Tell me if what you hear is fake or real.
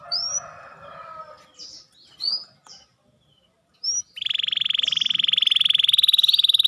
real